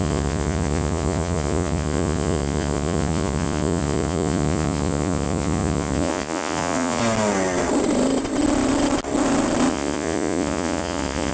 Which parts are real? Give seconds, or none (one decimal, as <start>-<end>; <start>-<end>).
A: 7.0-9.7